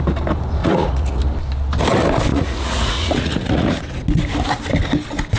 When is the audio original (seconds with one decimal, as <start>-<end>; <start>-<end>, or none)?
0.0-0.6; 1.2-2.3; 3.8-5.4